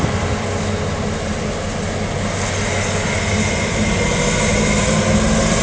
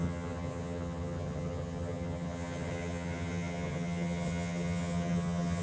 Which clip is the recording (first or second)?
first